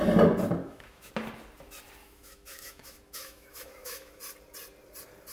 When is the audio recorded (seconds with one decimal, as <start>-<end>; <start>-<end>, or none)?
0.0-0.6; 1.1-2.0; 4.2-5.3